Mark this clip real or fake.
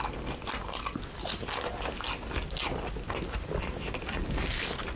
real